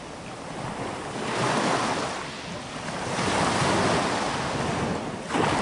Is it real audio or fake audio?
real